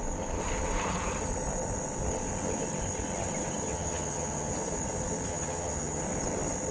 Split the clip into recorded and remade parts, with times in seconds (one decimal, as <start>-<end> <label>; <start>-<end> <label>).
0.0-3.7 recorded; 3.7-4.5 remade; 4.5-5.3 recorded; 5.3-6.0 remade; 6.0-6.7 recorded